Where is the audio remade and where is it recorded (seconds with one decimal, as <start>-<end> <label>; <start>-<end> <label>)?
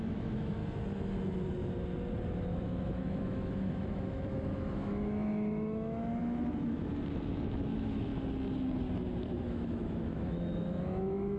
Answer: 0.0-0.6 remade; 0.6-2.5 recorded; 2.5-6.2 remade; 6.2-7.7 recorded; 7.7-8.1 remade; 8.1-9.2 recorded; 9.2-11.4 remade